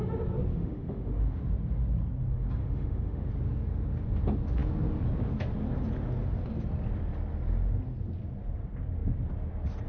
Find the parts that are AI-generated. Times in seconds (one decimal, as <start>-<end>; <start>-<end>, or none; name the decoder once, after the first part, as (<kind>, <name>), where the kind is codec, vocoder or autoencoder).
0.5-1.4 (autoencoder, DAC-VAE); 2.6-3.3